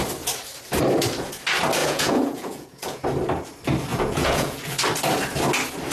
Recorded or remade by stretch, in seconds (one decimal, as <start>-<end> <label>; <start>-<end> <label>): 0.0-1.8 recorded; 1.8-3.0 remade; 3.0-3.9 recorded; 3.9-4.6 remade; 4.6-5.9 recorded